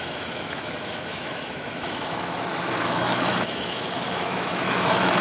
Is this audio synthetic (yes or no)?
yes